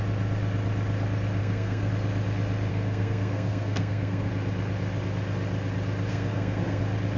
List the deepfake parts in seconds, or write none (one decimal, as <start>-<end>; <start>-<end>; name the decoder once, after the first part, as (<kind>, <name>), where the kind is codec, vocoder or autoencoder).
1.4-1.9 (codec, SNAC); 2.7-4.3; 6.1-6.8

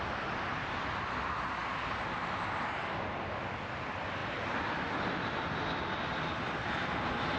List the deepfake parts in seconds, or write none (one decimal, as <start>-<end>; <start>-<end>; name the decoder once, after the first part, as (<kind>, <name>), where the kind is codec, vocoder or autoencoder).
none

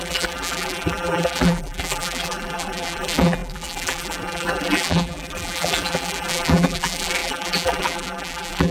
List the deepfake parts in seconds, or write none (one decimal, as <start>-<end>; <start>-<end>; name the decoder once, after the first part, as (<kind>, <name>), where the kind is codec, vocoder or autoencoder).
0.0-8.7 (vocoder, BigVGAN v2)

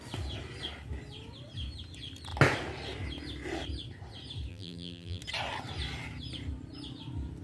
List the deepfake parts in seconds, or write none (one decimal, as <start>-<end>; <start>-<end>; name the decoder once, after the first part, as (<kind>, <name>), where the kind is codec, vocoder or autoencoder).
4.5-5.2 (vocoder, BigVGAN v2)